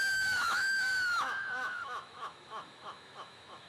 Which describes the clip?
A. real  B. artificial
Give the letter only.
B